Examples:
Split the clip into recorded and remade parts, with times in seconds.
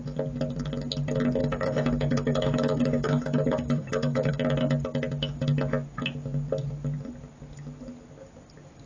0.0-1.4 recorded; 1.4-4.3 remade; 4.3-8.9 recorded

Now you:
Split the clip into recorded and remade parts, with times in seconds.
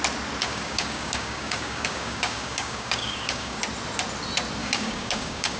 0.0-0.4 recorded; 0.4-3.6 remade; 3.6-4.6 recorded; 4.6-5.6 remade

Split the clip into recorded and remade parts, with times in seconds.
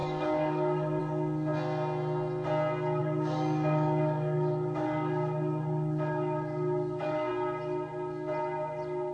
0.0-1.0 remade; 1.0-3.0 recorded; 3.0-7.3 remade; 7.3-9.1 recorded